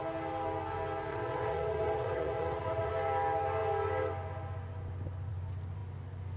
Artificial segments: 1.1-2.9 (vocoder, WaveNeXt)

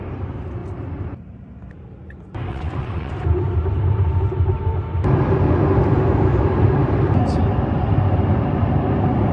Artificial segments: 2.5-3.1 (vocoder, WaveNeXt)

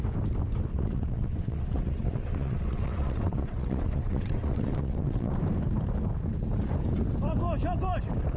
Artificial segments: 0.7-5.3 (vocoder, WaveNeXt)

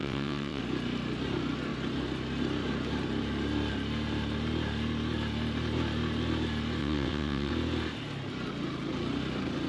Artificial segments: 0.0-0.6 (vocoder, WaveNeXt); 6.8-7.5

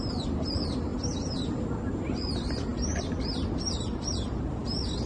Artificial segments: none

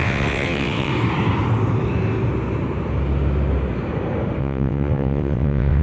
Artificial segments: 0.0-0.9 (vocoder, WaveNeXt); 4.4-5.8

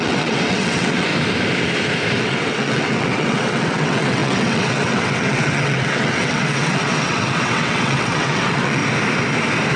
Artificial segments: 0.0-1.1 (vocoder, WaveNeXt); 2.2-8.8

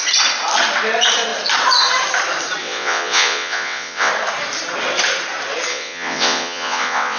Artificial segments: 2.6-4.1 (vocoder, WaveNeXt); 5.7-7.2